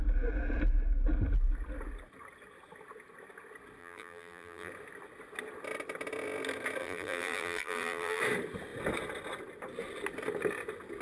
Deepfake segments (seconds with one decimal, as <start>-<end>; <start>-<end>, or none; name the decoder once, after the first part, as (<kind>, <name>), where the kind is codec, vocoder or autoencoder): 3.8-4.7 (vocoder, BigVGAN v2); 6.8-8.2